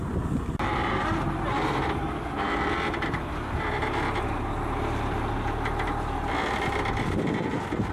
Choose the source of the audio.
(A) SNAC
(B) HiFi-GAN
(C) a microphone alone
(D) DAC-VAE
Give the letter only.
C